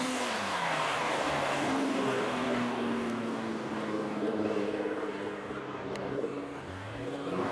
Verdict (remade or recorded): remade